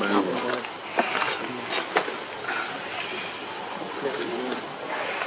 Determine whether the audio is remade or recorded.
recorded